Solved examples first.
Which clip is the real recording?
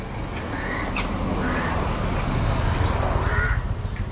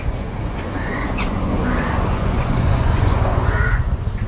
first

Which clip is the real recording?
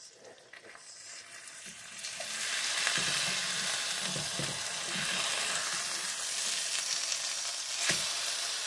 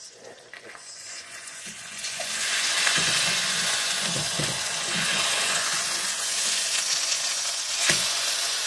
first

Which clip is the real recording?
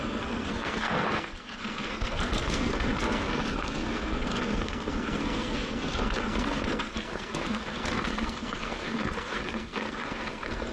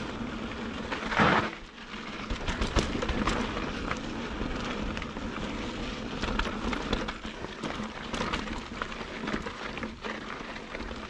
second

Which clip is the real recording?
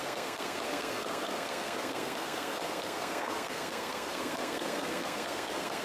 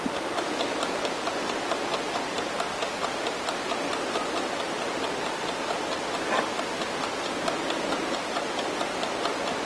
second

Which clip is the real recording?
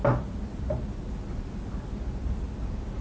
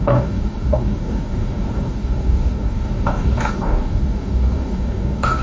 first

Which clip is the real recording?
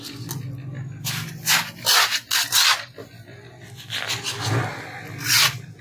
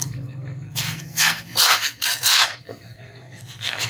first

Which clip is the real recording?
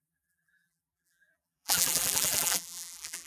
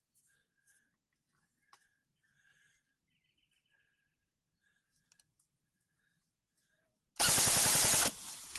second